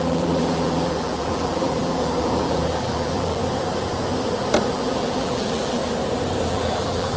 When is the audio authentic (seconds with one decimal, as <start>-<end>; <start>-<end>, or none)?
3.4-4.7; 5.8-6.5

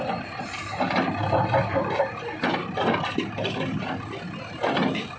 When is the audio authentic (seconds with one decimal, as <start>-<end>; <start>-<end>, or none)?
0.0-0.7; 2.0-2.6; 3.5-5.2

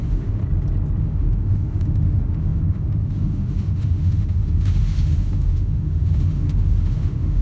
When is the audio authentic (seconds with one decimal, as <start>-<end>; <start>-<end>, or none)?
0.4-1.0

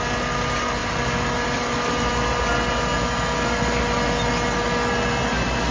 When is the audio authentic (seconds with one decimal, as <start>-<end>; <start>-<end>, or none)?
0.0-5.7

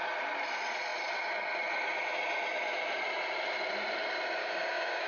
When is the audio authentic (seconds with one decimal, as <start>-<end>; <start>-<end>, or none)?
0.0-4.4